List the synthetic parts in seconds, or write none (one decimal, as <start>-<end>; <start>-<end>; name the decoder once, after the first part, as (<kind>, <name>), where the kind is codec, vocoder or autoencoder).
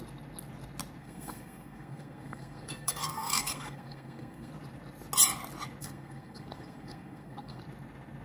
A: 1.0-4.5 (codec, SNAC); 5.8-7.6